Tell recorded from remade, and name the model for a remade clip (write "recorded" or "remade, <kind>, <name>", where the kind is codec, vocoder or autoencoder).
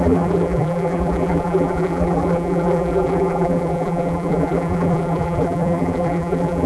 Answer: remade, vocoder, BigVGAN v2